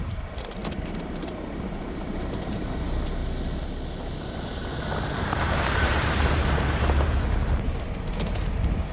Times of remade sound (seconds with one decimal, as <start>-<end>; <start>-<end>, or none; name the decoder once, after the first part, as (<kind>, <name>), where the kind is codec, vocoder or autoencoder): 0.0-0.6 (vocoder, BigVGAN v2); 1.2-3.2; 5.2-8.9